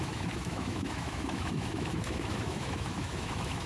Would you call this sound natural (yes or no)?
no